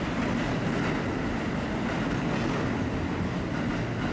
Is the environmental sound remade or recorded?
recorded